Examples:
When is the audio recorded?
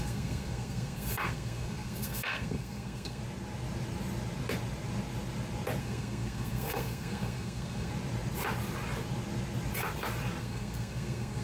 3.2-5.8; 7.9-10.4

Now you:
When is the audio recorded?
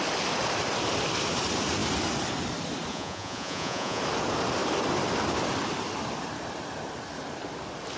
0.0-2.9; 4.0-8.0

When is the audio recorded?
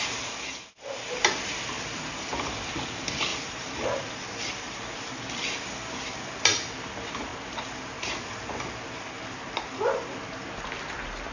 7.3-9.3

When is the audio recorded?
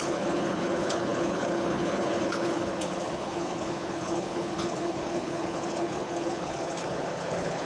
none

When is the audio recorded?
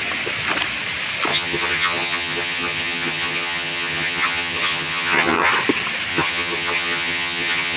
0.0-1.3; 5.5-6.1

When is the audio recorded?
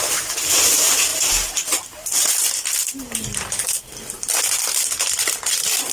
0.0-5.9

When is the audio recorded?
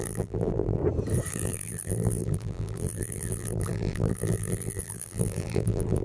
0.8-1.3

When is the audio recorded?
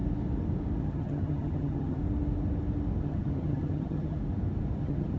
0.0-0.8; 2.0-3.0; 4.2-4.8